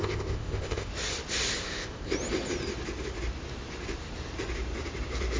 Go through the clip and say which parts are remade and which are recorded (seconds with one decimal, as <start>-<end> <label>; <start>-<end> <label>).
0.0-0.9 remade; 0.9-1.6 recorded; 1.6-2.1 remade; 2.1-5.4 recorded